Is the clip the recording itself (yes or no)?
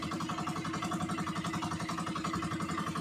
yes